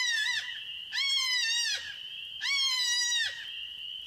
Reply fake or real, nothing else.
real